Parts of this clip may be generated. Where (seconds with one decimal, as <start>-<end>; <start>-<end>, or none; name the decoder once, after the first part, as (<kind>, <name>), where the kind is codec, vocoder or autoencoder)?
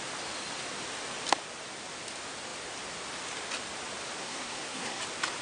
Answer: 4.2-5.0 (codec, SNAC)